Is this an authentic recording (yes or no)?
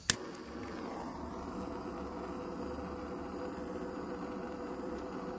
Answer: yes